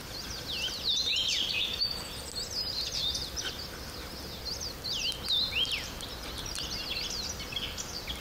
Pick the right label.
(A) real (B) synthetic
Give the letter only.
A